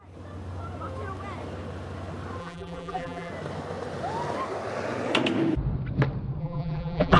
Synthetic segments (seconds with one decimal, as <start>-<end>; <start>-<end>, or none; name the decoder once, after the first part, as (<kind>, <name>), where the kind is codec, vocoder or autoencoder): 2.4-3.3 (vocoder, BigVGAN v2); 6.4-7.2